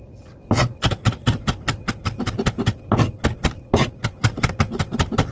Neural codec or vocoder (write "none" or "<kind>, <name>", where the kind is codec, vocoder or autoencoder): none